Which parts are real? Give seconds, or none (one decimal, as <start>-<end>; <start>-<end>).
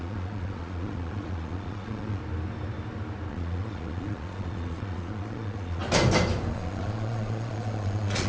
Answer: 2.2-3.3; 5.8-6.5